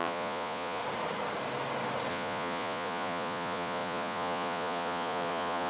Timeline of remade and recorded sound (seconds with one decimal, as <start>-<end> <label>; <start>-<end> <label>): 0.0-0.8 remade; 0.8-2.1 recorded; 2.1-5.7 remade